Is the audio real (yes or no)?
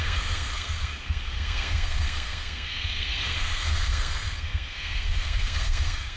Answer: no